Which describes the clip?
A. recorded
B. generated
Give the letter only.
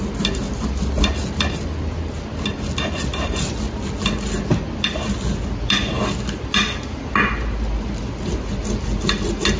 A